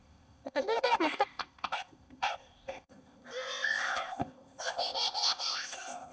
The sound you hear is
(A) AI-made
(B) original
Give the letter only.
A